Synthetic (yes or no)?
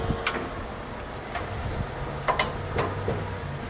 no